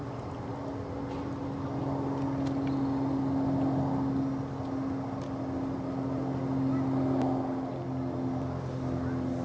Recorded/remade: recorded